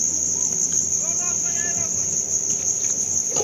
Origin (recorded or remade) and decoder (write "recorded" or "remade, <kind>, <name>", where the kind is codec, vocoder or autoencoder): recorded